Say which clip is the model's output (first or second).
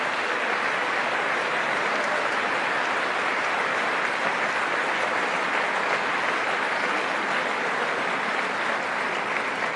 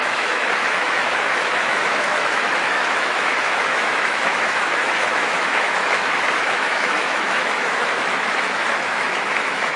second